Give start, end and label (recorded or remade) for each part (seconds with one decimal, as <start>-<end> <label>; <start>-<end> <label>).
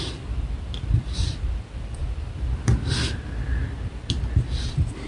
0.0-5.1 remade